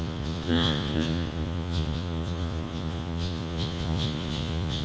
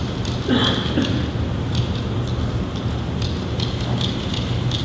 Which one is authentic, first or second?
second